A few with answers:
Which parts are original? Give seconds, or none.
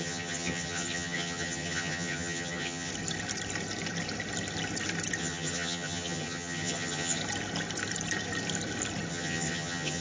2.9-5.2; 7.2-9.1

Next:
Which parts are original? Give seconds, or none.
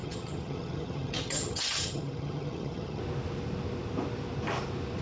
3.0-5.0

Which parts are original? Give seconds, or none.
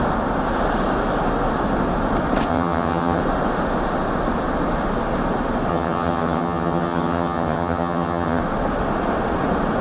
0.0-2.5; 3.2-5.7; 8.4-9.8